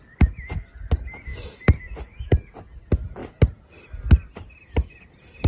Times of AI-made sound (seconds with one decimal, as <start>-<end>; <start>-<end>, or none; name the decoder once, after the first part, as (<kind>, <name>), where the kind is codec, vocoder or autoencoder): none